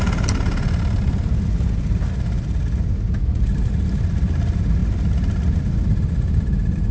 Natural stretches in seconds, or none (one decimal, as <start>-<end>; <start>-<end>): 0.0-6.9